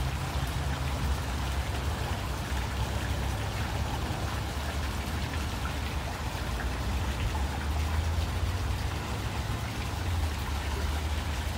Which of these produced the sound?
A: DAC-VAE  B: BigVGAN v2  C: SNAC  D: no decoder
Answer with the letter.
D